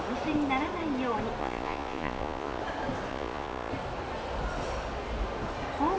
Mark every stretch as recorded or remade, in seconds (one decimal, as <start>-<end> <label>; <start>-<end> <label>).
0.0-1.4 recorded; 1.4-2.6 remade; 2.6-3.1 recorded; 3.1-3.7 remade; 3.7-6.0 recorded